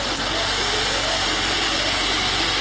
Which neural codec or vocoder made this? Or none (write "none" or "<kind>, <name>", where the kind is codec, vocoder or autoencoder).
none